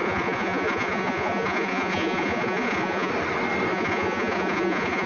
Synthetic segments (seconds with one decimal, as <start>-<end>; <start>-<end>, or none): 0.0-3.1; 3.7-5.1

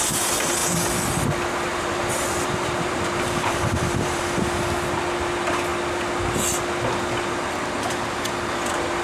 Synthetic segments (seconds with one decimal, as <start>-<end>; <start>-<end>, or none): 1.7-4.2